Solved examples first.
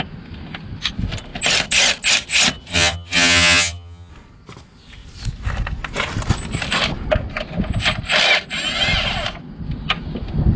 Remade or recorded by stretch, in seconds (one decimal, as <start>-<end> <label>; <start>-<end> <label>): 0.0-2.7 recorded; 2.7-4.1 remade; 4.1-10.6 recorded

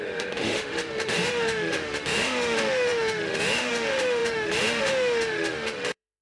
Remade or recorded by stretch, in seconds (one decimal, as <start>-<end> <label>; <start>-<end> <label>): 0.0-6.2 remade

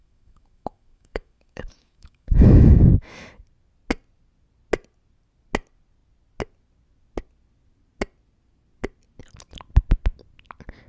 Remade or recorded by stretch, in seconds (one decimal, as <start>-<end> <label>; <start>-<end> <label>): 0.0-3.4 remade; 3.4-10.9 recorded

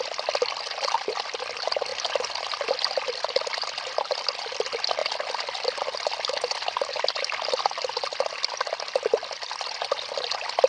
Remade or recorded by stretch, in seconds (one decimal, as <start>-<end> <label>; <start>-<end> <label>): 0.0-10.7 recorded

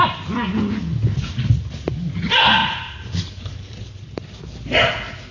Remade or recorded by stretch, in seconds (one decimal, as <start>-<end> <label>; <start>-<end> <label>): 0.0-2.6 recorded; 2.6-4.4 remade; 4.4-5.3 recorded

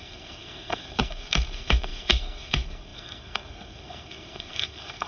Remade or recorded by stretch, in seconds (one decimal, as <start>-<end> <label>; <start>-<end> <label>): 0.0-5.1 remade

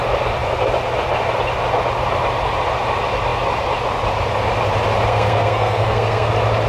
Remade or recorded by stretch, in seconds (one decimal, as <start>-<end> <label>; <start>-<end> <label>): 0.0-5.1 recorded; 5.1-6.3 remade; 6.3-6.7 recorded

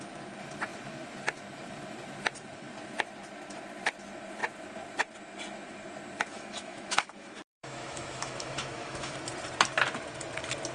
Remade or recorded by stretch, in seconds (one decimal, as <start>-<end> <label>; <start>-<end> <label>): 0.0-6.3 recorded; 6.3-9.1 remade; 9.1-10.7 recorded